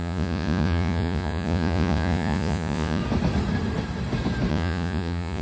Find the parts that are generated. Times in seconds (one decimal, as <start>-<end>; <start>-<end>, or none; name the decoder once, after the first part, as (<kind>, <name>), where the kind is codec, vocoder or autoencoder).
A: 0.0-3.0 (vocoder, Vocos); 4.5-5.4